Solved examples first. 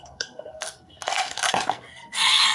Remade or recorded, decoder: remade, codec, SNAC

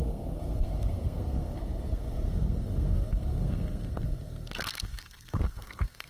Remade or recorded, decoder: remade, codec, SNAC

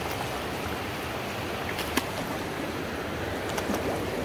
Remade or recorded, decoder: recorded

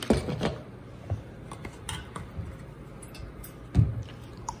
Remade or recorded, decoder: recorded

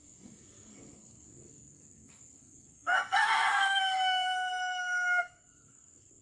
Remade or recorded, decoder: remade, codec, SNAC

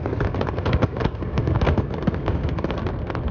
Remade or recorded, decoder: remade, codec, SNAC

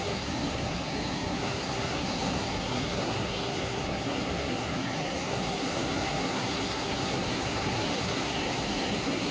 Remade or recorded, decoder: remade, codec, SNAC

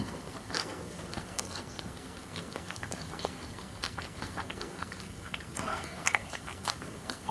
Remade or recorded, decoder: remade, codec, SNAC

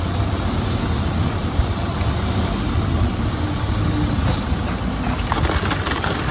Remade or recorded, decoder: recorded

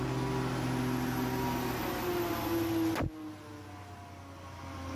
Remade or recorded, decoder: recorded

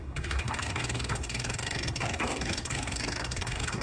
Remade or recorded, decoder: remade, codec, SNAC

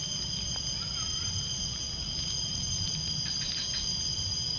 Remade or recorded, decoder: recorded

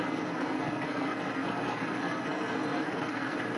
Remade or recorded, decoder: remade, codec, SNAC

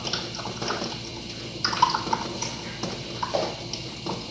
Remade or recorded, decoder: recorded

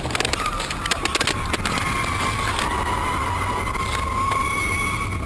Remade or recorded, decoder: recorded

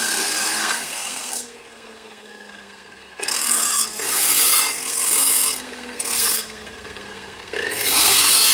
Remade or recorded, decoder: remade, codec, SNAC